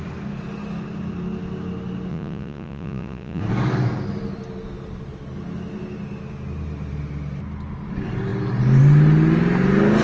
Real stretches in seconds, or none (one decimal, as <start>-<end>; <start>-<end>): 0.0-2.1; 3.4-10.0